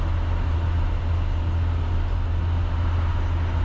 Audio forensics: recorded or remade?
recorded